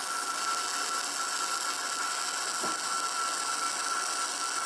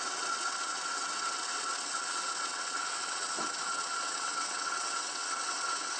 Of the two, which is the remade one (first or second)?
second